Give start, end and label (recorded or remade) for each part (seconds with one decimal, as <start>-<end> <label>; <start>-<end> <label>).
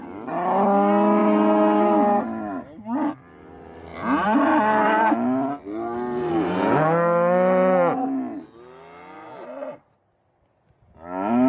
0.0-3.9 recorded; 3.9-6.3 remade; 6.3-11.5 recorded